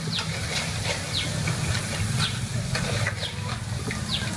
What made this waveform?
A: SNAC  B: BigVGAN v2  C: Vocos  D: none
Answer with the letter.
D